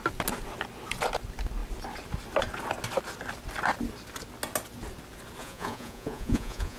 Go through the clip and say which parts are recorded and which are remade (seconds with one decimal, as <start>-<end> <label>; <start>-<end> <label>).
0.0-5.4 recorded; 5.4-6.8 remade